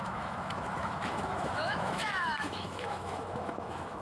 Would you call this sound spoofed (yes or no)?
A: yes